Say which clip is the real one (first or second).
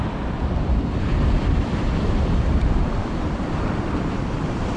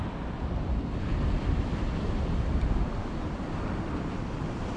second